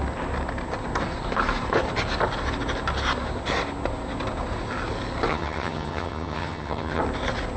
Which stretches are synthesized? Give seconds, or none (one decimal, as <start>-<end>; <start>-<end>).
5.3-7.0